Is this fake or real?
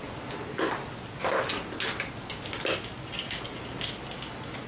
real